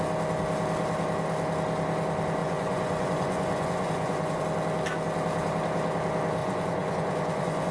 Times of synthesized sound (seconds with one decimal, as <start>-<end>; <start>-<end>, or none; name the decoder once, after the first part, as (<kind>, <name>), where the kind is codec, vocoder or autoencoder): 2.4-4.4 (vocoder, Vocos); 6.4-7.7

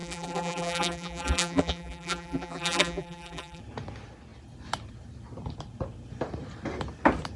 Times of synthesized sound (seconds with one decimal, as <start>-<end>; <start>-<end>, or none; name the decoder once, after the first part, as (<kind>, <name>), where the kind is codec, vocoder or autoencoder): 0.0-3.6 (vocoder, BigVGAN v2)

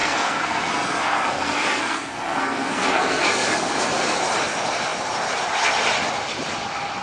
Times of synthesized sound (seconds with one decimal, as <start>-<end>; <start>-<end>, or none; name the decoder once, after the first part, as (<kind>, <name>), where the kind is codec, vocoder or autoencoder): 0.0-4.2 (codec, SNAC)

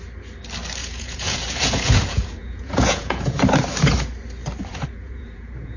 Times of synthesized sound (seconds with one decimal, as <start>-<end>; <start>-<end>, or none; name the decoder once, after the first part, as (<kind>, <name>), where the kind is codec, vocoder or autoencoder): 0.8-3.5 (vocoder, Vocos); 4.7-5.8

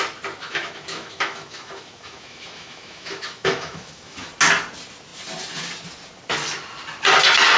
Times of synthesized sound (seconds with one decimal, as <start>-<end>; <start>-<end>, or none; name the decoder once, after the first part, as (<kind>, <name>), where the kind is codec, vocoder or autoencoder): 0.4-4.3 (autoencoder, DAC-VAE)

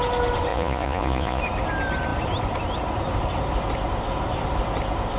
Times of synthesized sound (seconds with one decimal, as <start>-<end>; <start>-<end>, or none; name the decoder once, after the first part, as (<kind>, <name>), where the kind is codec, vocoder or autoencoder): 0.5-1.4 (vocoder, Vocos)